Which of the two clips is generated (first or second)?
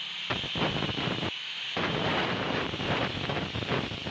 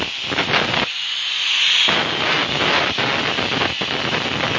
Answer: first